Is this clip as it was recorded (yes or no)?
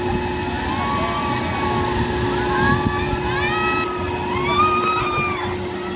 yes